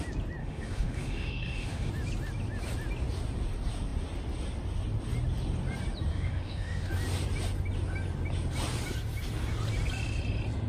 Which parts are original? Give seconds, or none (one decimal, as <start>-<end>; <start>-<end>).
0.0-0.4; 1.9-6.1; 6.9-10.7